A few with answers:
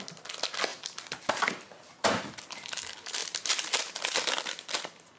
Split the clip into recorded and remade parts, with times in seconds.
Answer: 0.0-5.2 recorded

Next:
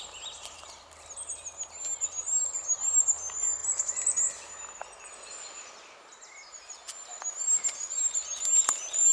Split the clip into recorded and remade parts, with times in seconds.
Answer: 0.0-9.1 recorded

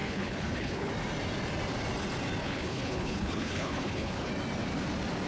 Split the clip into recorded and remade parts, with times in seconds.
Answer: 0.0-0.9 remade; 0.9-2.4 recorded; 2.4-4.3 remade; 4.3-5.3 recorded

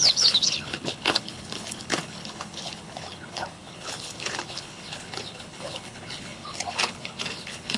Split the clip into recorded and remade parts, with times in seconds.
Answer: 0.0-7.8 remade